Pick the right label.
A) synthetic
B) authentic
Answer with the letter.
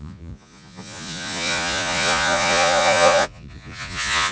A